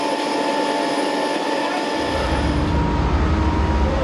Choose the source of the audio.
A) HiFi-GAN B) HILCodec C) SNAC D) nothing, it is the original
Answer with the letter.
D